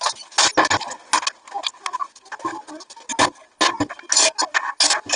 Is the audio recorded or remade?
recorded